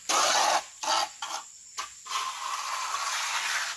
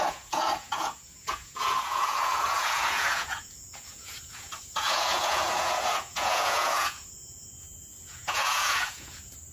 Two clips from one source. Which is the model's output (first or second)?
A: second